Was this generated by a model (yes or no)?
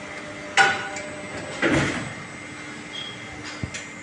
no